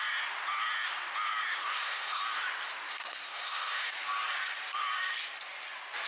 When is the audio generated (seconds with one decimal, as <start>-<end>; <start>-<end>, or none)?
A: 1.6-2.2; 2.9-3.9